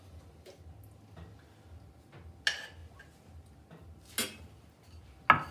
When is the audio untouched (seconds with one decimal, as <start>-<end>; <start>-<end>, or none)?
0.0-5.5